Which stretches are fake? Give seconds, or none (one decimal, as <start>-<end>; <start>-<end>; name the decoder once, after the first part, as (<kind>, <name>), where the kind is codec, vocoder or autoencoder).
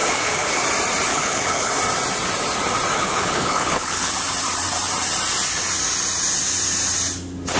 0.0-0.6 (codec, HILCodec); 1.1-1.7; 2.9-4.1